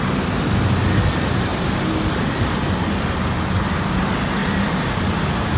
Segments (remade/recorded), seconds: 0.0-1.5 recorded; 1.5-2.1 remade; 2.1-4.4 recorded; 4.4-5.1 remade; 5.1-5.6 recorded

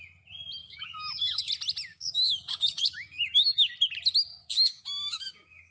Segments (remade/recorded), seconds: 0.0-0.6 recorded; 0.6-1.5 remade; 1.5-1.9 recorded; 1.9-3.7 remade; 3.7-4.3 recorded; 4.3-5.7 remade

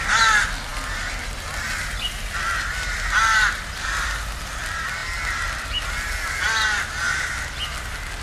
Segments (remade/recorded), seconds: 0.0-8.2 recorded

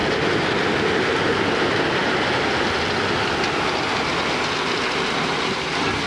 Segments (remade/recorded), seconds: 0.0-6.1 recorded

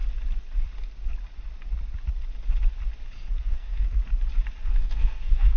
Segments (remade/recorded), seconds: 0.0-3.4 recorded; 3.4-4.0 remade; 4.0-4.7 recorded; 4.7-5.6 remade

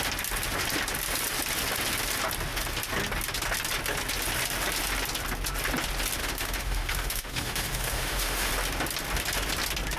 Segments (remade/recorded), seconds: 0.0-6.2 recorded; 6.2-8.5 remade; 8.5-10.0 recorded

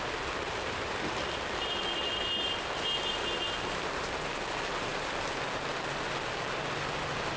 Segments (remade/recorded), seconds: 0.0-7.4 recorded

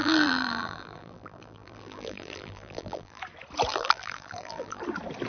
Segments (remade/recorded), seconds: 0.0-3.2 remade; 3.2-3.7 recorded; 3.7-4.8 remade; 4.8-5.3 recorded